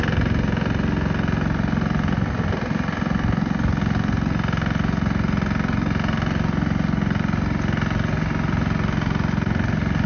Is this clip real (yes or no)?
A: yes